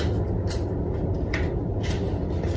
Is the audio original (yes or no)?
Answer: yes